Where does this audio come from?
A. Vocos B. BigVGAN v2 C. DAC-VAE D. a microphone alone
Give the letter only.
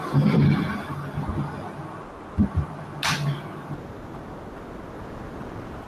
D